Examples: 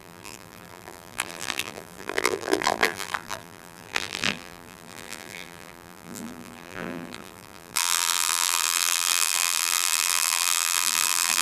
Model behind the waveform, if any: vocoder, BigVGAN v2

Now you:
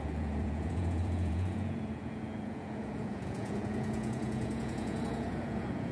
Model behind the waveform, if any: vocoder, Vocos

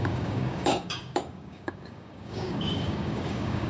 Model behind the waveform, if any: codec, DAC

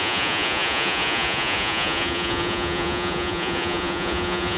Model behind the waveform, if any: vocoder, Vocos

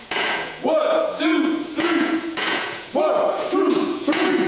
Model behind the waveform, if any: vocoder, Vocos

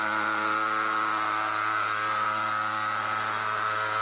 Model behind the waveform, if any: none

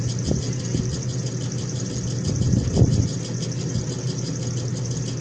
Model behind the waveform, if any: none